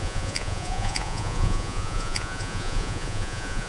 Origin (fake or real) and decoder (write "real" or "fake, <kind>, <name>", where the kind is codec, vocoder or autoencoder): fake, vocoder, Vocos